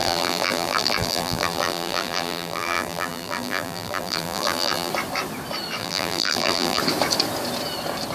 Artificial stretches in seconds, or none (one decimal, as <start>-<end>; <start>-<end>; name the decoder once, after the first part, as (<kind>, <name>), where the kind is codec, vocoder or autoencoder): 0.0-4.9 (vocoder, BigVGAN v2); 5.8-6.8